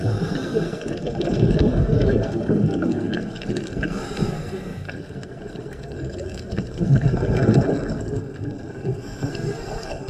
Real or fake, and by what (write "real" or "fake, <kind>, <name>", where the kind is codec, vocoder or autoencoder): fake, codec, SNAC